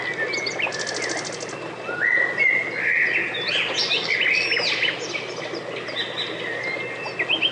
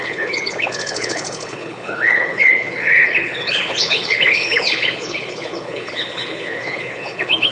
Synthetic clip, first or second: second